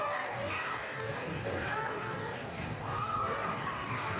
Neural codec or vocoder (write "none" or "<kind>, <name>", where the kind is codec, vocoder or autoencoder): codec, DAC